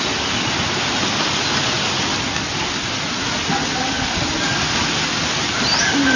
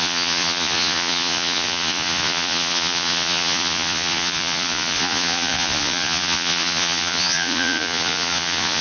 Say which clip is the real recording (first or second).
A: first